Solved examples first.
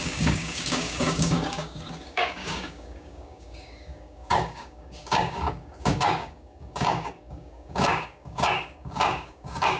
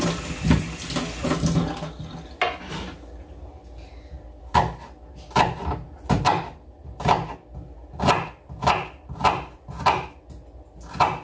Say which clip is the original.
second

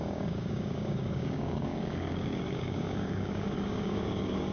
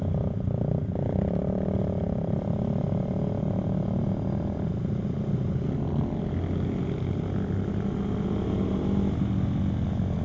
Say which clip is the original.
second